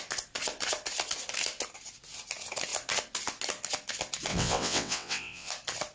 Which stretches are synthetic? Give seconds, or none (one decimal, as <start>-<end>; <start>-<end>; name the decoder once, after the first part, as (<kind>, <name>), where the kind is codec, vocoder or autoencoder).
4.3-5.5 (vocoder, WaveNeXt)